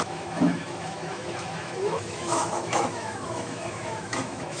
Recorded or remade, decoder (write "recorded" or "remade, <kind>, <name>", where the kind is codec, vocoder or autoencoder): remade, autoencoder, DAC-VAE